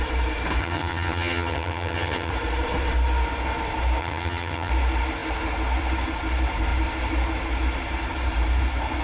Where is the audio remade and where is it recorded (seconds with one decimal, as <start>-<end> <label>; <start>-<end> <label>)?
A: 0.0-0.6 recorded; 0.6-2.3 remade; 2.3-4.0 recorded; 4.0-4.7 remade; 4.7-9.0 recorded